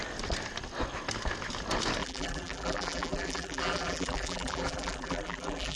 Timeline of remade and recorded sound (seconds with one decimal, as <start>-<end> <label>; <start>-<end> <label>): 0.0-2.0 recorded; 2.0-5.8 remade